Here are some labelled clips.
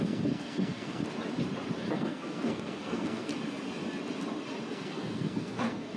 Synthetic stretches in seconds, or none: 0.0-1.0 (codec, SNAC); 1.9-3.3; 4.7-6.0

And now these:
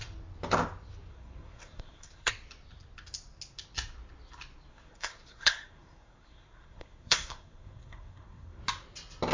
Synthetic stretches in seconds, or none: 1.1-2.3 (codec, SNAC); 4.7-8.6

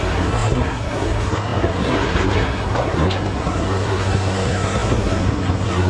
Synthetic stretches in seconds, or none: 0.0-5.9 (codec, SNAC)

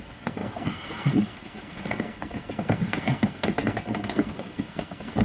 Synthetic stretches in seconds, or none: 0.0-5.2 (codec, SNAC)

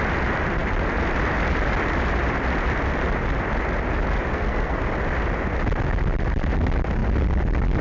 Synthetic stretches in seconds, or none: 4.3-4.8 (codec, SNAC)

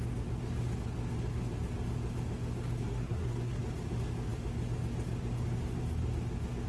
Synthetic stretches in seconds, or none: 2.8-3.6 (codec, SNAC)

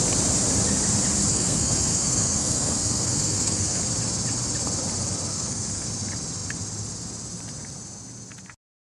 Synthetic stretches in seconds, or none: 1.3-3.8 (codec, SNAC); 5.3-5.9

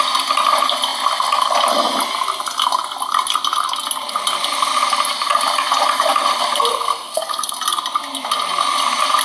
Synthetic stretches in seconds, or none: 6.7-7.5 (codec, SNAC)